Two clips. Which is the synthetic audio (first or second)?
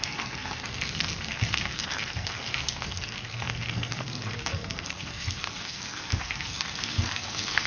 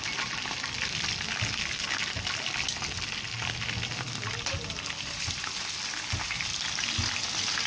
first